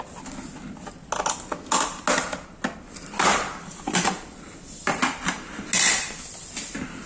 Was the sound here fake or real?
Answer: real